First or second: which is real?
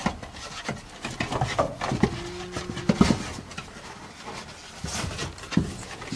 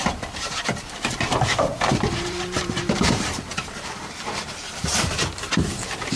first